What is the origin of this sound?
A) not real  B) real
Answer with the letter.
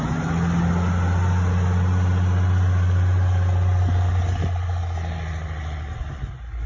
B